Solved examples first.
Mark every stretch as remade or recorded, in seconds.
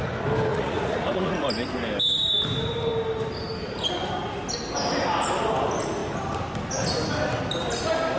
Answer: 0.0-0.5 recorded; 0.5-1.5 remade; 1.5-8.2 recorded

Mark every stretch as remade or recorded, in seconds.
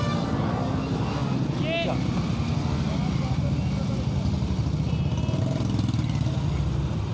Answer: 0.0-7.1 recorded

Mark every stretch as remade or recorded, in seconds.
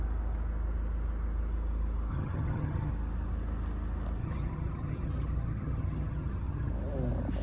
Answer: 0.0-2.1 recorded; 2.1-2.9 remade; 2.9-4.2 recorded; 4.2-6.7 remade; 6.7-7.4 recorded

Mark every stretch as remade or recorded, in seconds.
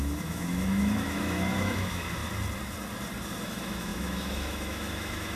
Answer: 0.0-2.2 remade; 2.2-3.4 recorded; 3.4-5.4 remade